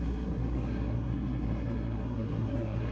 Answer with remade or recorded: remade